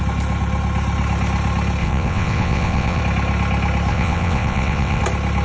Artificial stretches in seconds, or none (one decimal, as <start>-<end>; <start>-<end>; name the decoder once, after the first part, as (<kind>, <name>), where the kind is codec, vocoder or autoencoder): 1.8-3.0 (vocoder, WaveNeXt); 3.9-5.0